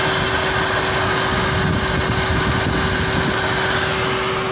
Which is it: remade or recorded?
recorded